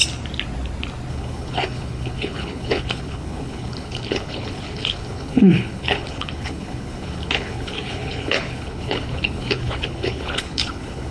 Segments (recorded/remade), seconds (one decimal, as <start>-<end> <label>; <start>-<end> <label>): 0.0-1.1 recorded; 1.1-11.1 remade